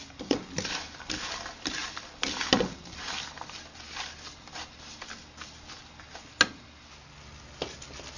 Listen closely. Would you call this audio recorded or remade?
recorded